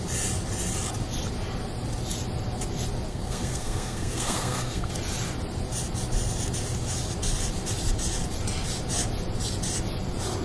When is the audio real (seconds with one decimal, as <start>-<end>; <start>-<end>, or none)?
0.0-3.1; 4.9-10.4